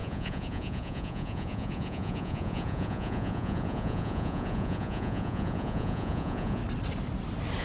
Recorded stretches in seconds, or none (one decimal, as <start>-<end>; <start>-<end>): 6.6-7.6